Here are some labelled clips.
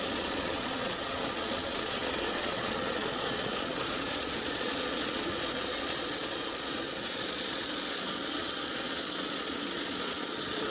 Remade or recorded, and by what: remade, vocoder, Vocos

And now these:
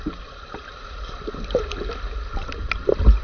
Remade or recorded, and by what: recorded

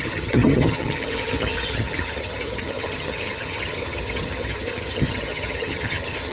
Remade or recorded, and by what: remade, vocoder, HiFi-GAN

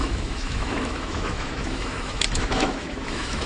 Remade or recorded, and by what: remade, autoencoder, DAC-VAE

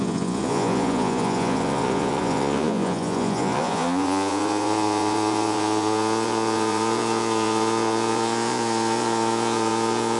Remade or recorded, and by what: remade, vocoder, Vocos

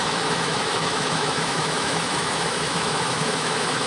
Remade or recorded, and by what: remade, autoencoder, DAC-VAE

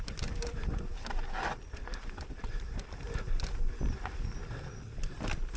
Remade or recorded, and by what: recorded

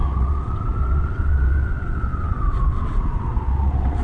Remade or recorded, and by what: remade, vocoder, WaveNeXt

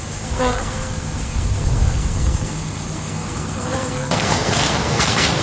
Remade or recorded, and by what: remade, codec, SNAC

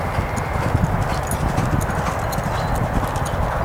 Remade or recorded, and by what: recorded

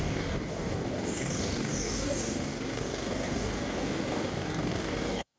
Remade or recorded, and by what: remade, codec, DAC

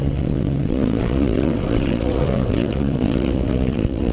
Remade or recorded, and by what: remade, vocoder, WaveNeXt